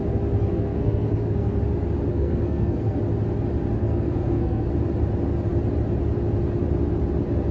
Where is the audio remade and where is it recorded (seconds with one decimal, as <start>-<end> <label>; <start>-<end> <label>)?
0.0-0.4 recorded; 0.4-1.6 remade; 1.6-2.1 recorded; 2.1-3.0 remade; 3.0-3.8 recorded; 3.8-4.7 remade; 4.7-7.5 recorded